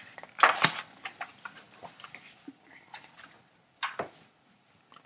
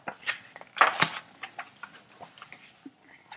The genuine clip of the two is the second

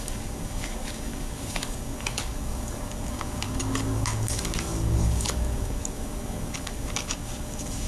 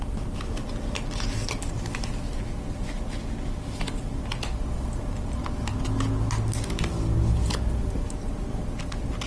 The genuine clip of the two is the second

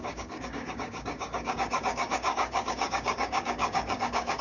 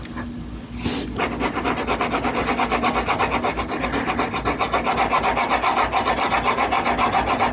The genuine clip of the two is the second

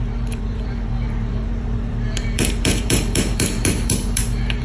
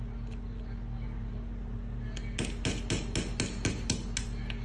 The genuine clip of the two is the second